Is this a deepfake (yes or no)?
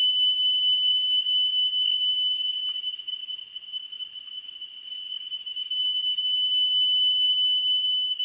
no